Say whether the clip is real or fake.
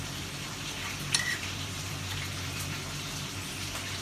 fake